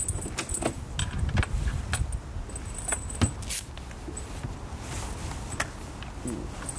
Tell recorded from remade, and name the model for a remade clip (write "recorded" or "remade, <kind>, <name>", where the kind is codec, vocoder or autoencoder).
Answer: recorded